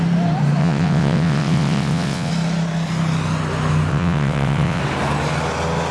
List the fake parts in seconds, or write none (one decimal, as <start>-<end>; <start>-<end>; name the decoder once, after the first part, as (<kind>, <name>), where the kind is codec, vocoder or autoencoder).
0.6-2.3 (vocoder, WaveNeXt); 3.9-4.8

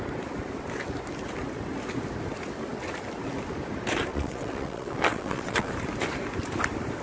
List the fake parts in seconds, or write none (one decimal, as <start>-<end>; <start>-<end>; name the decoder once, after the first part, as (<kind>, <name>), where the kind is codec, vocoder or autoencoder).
4.1-5.7 (vocoder, WaveNeXt)

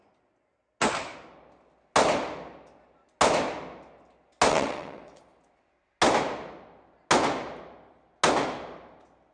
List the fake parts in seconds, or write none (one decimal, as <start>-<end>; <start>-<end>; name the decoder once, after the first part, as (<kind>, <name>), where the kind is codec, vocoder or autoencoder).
4.5-5.2 (vocoder, WaveNeXt)

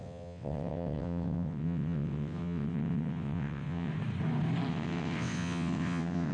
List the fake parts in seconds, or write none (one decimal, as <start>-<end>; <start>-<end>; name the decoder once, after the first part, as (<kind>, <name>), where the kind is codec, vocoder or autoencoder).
0.0-3.9 (vocoder, WaveNeXt); 4.7-6.3

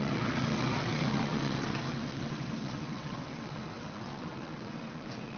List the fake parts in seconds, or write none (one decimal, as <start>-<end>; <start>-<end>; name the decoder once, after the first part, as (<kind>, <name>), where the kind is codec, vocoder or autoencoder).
0.0-5.4 (vocoder, WaveNeXt)